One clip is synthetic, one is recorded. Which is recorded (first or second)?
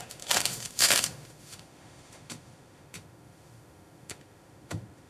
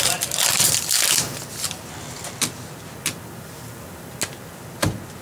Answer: second